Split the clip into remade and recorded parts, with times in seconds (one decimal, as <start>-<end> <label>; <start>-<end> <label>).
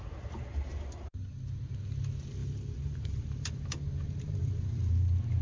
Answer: 0.0-0.5 recorded; 0.5-1.1 remade; 1.1-2.4 recorded; 2.4-4.9 remade; 4.9-5.4 recorded